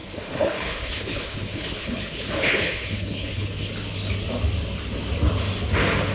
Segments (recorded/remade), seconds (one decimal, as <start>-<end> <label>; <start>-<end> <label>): 0.0-3.7 remade; 3.7-6.1 recorded